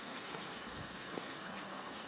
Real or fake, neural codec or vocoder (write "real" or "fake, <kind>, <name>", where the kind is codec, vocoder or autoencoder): fake, codec, SNAC